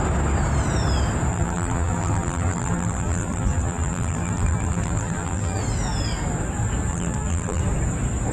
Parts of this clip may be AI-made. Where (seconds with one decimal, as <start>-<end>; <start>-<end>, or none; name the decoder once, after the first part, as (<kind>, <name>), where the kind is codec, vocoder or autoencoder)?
1.3-5.6 (vocoder, BigVGAN v2); 6.9-7.6

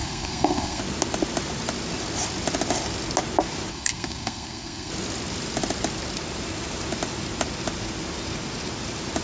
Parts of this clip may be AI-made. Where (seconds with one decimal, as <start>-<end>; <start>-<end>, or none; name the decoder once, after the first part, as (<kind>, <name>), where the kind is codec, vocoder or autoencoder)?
0.0-0.8 (codec, SNAC); 3.7-4.9